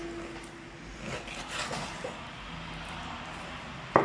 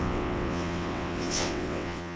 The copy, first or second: second